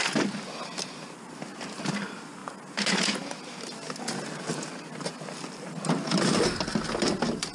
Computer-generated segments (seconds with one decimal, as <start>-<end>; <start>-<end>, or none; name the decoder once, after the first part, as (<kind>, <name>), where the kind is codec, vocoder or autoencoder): none